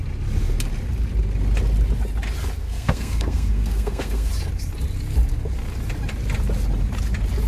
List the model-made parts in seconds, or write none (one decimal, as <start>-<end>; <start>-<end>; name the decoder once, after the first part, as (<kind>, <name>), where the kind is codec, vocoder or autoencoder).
2.6-4.3 (codec, SNAC)